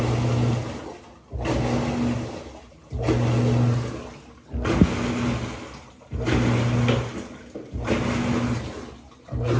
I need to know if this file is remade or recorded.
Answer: recorded